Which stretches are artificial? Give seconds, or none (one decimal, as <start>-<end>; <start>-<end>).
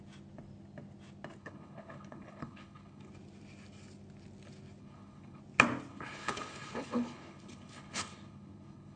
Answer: 1.4-3.1; 4.8-5.4; 5.9-9.0